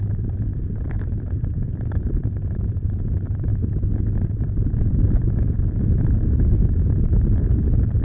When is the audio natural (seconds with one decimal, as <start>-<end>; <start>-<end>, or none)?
3.5-6.9